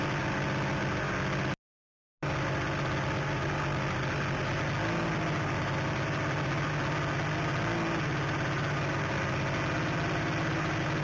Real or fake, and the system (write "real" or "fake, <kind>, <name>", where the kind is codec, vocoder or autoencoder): real